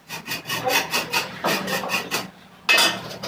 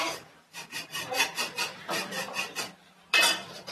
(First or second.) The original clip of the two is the first